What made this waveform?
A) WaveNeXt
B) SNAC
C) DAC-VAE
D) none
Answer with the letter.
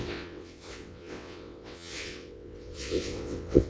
A